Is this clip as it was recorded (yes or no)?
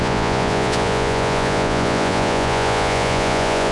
no